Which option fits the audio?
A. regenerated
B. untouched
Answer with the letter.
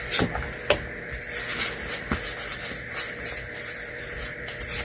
B